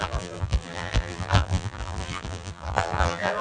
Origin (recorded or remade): remade